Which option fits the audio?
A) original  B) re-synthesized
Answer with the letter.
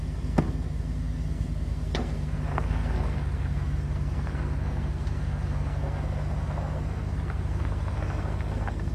B